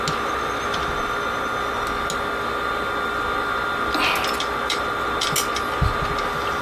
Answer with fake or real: real